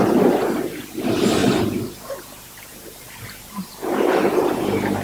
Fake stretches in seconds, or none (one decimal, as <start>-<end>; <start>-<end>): 1.4-4.1